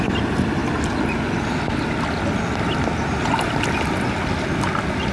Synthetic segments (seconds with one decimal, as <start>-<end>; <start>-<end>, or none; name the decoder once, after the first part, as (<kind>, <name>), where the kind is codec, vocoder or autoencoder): none

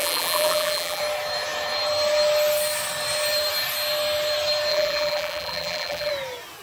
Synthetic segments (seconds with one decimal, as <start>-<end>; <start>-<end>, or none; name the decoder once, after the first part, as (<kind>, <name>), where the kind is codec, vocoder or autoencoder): 0.0-1.0 (vocoder, BigVGAN v2); 4.7-6.1

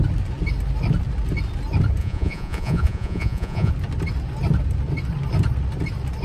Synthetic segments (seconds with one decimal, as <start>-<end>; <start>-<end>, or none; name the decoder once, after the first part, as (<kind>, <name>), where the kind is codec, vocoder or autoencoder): 2.0-3.7 (vocoder, Vocos)

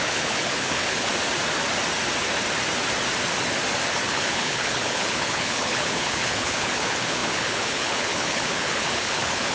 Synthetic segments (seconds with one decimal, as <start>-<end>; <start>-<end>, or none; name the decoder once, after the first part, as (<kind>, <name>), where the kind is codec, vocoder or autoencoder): 0.0-1.1 (codec, HILCodec); 4.0-9.5

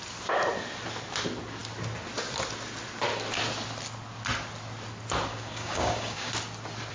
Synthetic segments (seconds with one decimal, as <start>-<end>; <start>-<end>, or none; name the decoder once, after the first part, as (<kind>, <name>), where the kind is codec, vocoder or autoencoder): 5.3-6.3 (codec, DAC)

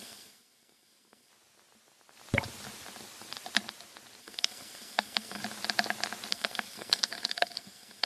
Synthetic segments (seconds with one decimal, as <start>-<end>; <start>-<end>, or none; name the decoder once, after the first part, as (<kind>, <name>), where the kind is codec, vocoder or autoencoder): 0.0-1.3 (codec, SNAC); 4.2-5.4; 6.3-8.1